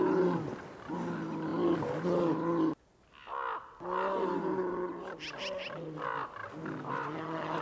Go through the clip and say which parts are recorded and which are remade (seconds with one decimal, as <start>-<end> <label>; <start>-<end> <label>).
0.0-7.6 recorded